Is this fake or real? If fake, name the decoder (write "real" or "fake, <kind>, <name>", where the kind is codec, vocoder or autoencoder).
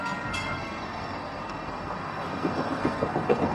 fake, codec, SNAC